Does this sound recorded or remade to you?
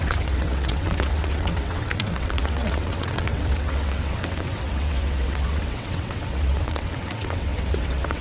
remade